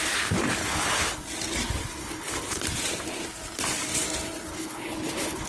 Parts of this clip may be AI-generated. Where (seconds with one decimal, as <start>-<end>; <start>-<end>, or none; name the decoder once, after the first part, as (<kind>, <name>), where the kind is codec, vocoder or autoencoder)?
0.6-1.2 (codec, HILCodec); 2.0-2.6; 4.5-5.5